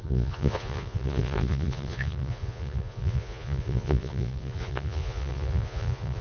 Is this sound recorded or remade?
remade